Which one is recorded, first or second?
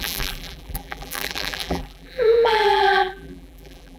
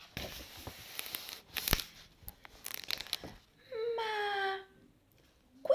second